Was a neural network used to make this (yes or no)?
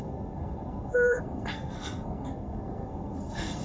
yes